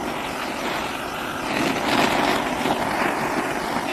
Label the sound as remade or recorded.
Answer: recorded